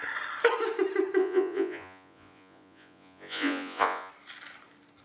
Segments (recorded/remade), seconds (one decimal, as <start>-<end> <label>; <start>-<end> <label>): 0.0-1.2 recorded; 1.2-4.1 remade; 4.1-5.0 recorded